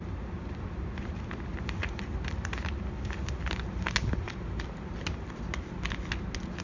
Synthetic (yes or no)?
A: no